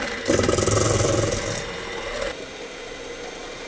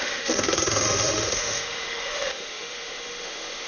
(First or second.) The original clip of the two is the first